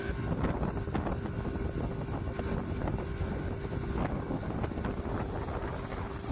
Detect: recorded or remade recorded